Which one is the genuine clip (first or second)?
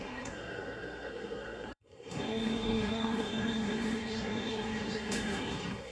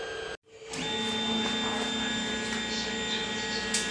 second